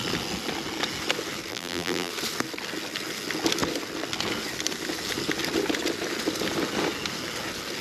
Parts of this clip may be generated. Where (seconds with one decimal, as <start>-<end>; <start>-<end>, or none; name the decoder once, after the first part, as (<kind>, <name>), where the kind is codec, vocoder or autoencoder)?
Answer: 1.5-2.1 (vocoder, BigVGAN v2)